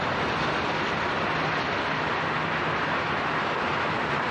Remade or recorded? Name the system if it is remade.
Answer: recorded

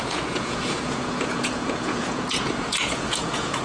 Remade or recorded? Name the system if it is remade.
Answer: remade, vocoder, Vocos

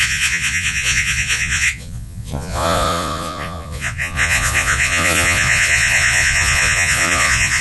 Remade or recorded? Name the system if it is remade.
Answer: remade, vocoder, Vocos